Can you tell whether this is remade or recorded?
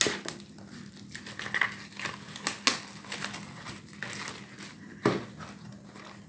recorded